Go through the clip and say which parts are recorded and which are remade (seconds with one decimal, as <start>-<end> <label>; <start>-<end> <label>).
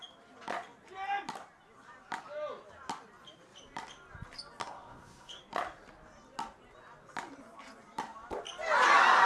0.0-4.6 recorded; 4.6-5.4 remade; 5.4-9.3 recorded